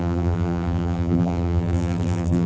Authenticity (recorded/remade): remade